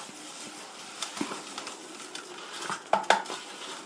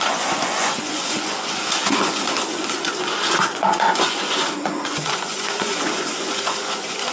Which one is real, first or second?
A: first